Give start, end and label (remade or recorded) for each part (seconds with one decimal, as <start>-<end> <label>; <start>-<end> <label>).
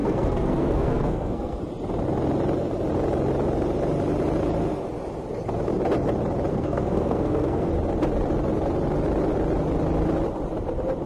0.0-1.6 remade; 1.6-6.5 recorded; 6.5-7.7 remade; 7.7-11.1 recorded